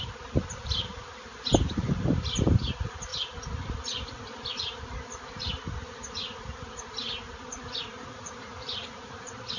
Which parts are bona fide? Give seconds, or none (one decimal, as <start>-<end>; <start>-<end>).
3.1-7.8